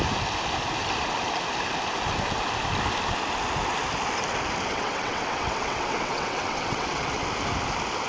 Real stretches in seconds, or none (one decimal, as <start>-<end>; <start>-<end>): 0.0-4.7; 7.3-8.1